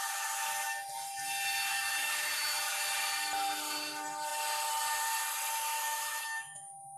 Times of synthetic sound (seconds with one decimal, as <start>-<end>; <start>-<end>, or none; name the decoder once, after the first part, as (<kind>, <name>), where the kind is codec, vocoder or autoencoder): 1.7-2.8 (autoencoder, DAC-VAE); 5.7-7.0